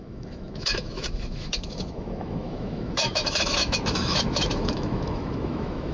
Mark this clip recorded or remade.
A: remade